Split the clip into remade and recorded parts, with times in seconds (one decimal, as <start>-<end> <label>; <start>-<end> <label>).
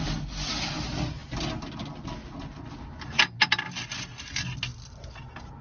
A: 0.0-5.6 recorded